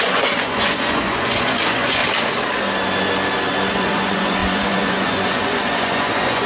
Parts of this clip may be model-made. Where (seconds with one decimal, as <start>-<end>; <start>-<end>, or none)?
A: 0.0-2.0; 3.7-6.5